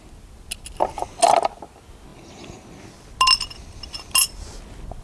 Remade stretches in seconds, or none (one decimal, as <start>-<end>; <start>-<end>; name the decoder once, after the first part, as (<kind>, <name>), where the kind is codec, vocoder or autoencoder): none